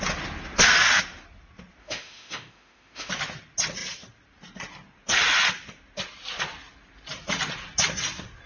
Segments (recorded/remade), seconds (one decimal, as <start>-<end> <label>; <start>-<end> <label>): 0.0-1.8 recorded; 1.8-3.1 remade; 3.1-8.5 recorded